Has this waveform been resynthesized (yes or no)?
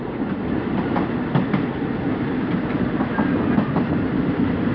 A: no